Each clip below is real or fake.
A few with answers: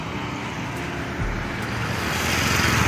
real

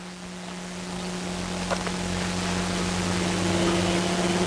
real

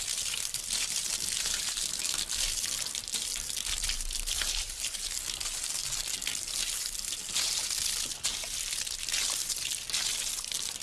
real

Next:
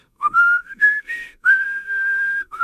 fake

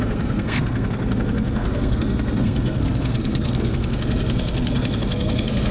fake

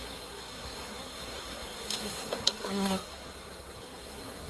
fake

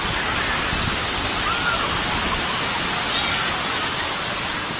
real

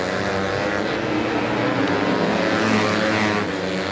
real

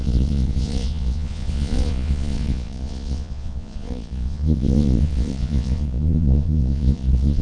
fake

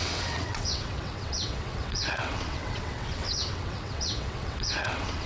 fake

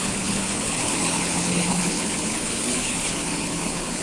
fake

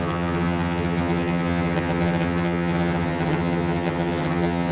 fake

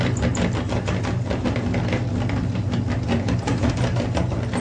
real